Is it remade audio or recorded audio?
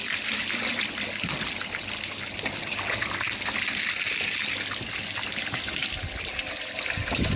recorded